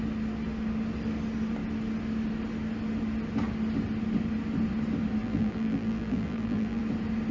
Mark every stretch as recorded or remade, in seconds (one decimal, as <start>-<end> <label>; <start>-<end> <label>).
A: 0.0-5.2 recorded; 5.2-6.8 remade; 6.8-7.3 recorded